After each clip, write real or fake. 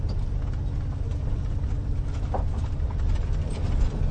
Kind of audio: real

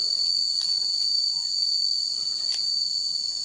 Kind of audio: real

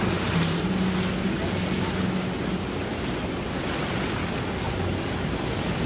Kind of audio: real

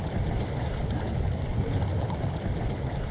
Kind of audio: fake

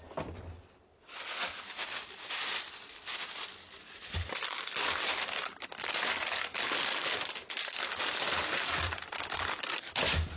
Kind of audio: real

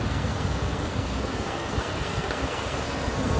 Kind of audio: fake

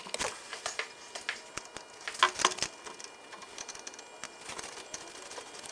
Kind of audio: real